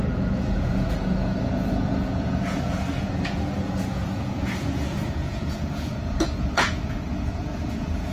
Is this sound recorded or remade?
remade